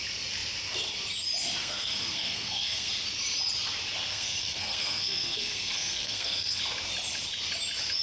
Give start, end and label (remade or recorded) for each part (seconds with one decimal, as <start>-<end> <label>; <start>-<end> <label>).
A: 0.0-1.6 recorded; 1.6-2.9 remade; 2.9-4.1 recorded; 4.1-6.6 remade; 6.6-8.0 recorded